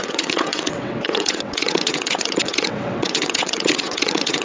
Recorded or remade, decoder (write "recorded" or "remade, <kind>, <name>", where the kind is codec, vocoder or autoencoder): remade, vocoder, WaveNeXt